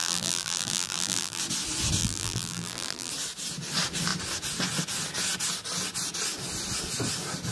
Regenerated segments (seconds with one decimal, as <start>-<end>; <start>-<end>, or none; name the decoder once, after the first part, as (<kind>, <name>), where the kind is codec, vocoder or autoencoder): 0.0-1.4 (vocoder, BigVGAN v2); 2.0-3.1